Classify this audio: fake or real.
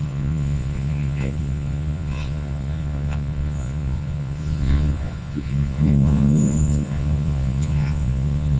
fake